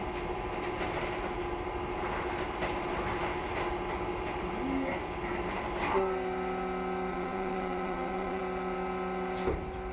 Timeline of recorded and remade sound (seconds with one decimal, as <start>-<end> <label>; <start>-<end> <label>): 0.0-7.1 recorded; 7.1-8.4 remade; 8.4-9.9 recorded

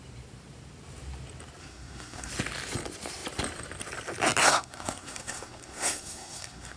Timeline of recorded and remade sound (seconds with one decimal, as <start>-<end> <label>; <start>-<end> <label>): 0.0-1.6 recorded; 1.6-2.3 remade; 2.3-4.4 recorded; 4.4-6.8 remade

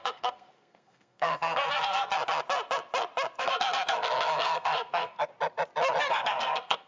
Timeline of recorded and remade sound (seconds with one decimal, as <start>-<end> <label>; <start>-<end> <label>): 0.0-2.1 remade; 2.1-3.4 recorded; 3.4-5.3 remade; 5.3-6.0 recorded; 6.0-6.9 remade

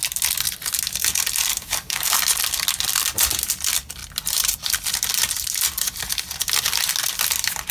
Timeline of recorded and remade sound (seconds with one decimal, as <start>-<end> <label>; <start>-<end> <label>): 0.0-1.5 recorded; 1.5-2.1 remade; 2.1-7.7 recorded

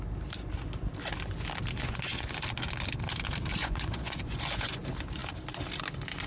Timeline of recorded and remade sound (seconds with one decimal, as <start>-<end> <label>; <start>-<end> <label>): 0.0-1.8 recorded; 1.8-2.3 remade; 2.3-3.6 recorded; 3.6-4.8 remade; 4.8-6.3 recorded

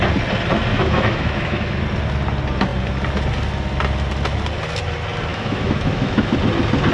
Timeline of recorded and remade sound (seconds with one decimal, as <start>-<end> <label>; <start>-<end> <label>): 0.0-0.7 recorded; 0.7-1.8 remade; 1.8-5.3 recorded; 5.3-6.4 remade; 6.4-6.9 recorded

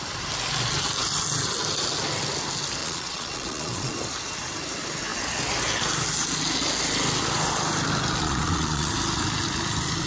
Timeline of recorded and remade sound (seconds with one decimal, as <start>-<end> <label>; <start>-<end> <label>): 0.0-2.8 recorded; 2.8-3.9 remade; 3.9-8.2 recorded; 8.2-8.9 remade; 8.9-10.1 recorded